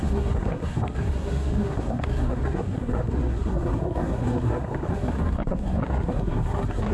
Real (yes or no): no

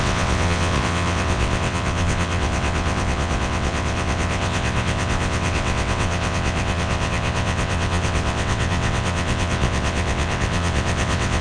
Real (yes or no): no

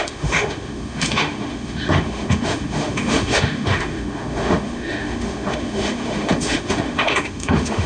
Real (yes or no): no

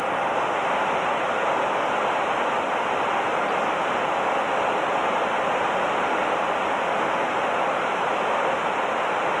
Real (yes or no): yes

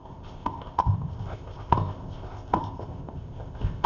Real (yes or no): no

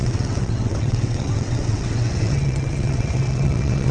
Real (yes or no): no